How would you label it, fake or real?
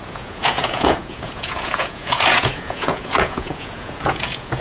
fake